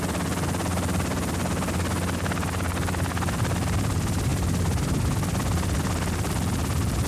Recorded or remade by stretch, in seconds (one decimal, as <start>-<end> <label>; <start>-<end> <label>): 0.0-4.3 recorded; 4.3-5.8 remade; 5.8-7.1 recorded